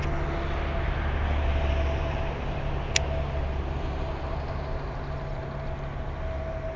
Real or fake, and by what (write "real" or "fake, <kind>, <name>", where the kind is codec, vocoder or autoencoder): real